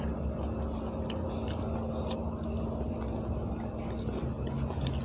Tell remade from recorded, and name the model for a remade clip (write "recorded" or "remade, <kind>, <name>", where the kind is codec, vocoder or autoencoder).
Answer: recorded